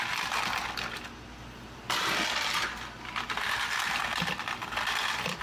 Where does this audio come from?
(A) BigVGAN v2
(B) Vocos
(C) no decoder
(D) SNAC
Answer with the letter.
C